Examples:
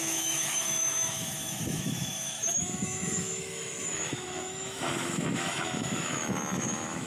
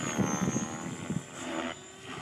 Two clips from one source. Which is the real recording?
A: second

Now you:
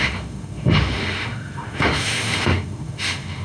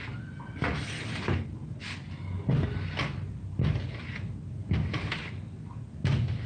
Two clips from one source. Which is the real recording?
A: second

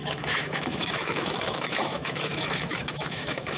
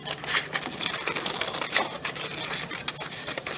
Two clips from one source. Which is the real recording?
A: second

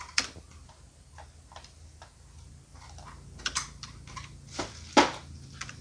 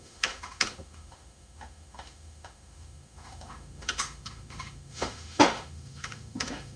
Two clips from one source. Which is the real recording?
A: first